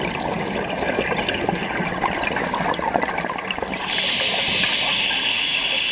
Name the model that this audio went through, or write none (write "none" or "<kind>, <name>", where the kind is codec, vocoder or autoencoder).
none